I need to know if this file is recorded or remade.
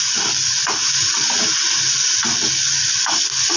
recorded